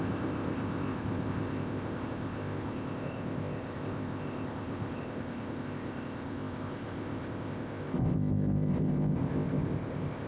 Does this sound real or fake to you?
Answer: fake